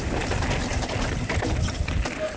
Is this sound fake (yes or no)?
no